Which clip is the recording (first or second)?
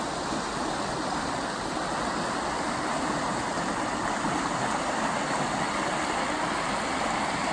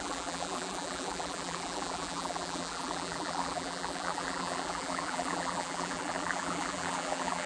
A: first